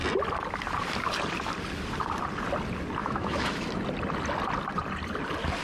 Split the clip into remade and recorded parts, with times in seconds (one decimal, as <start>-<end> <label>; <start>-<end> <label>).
0.0-3.0 recorded; 3.0-3.7 remade; 3.7-5.6 recorded